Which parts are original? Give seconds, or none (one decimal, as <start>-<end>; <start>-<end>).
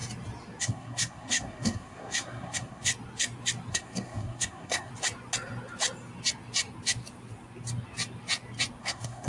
0.0-0.6; 2.9-3.7; 4.9-8.8